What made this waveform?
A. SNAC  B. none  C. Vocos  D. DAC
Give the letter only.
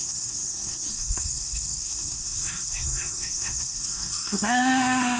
A